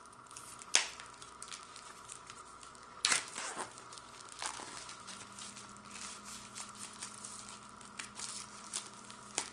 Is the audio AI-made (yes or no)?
no